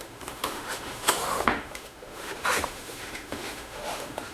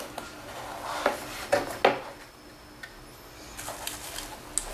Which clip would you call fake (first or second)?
first